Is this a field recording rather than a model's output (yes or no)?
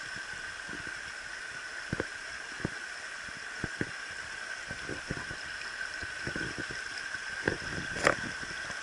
yes